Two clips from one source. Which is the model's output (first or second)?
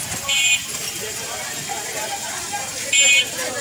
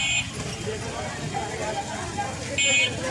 first